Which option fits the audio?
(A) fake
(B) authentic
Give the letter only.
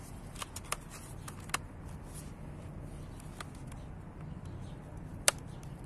B